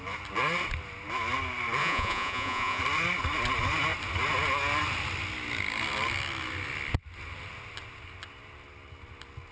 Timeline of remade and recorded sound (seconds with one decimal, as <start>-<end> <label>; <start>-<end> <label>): 0.0-1.8 recorded; 1.8-2.8 remade; 2.8-9.5 recorded